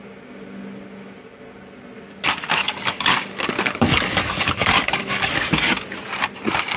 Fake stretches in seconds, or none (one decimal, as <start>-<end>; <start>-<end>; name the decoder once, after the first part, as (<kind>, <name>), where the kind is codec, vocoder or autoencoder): 2.6-5.3 (codec, DAC)